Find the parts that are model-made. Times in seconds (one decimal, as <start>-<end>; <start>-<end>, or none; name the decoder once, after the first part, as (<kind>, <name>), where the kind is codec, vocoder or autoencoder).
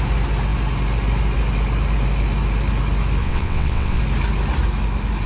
3.2-4.0 (vocoder, WaveNeXt)